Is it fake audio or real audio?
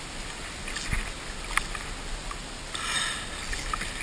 real